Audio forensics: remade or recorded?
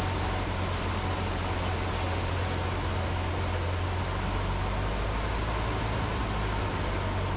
recorded